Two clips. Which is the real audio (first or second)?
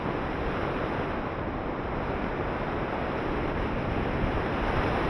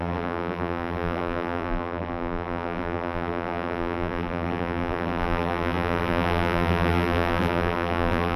first